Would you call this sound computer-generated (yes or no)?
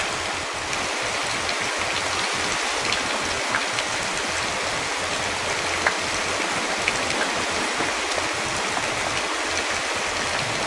no